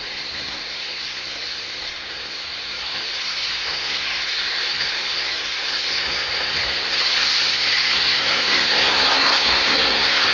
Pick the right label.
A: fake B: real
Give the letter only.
A